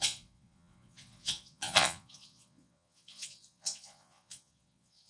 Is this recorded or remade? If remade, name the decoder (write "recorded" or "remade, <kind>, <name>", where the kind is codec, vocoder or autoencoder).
remade, vocoder, Vocos